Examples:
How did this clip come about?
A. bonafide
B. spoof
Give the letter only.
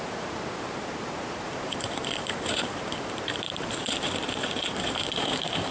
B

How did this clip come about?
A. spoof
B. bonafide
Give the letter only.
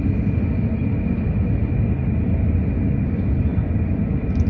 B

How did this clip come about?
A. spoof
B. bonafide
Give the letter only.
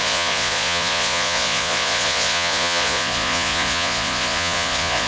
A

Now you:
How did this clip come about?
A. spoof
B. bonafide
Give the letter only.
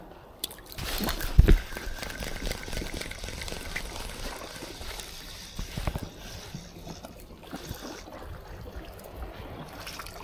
A